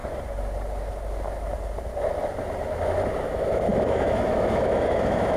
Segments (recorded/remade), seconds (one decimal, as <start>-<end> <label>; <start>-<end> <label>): 0.0-3.2 recorded; 3.2-5.4 remade